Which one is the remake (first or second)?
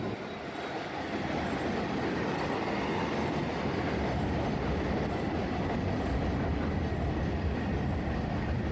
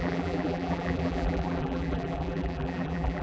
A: second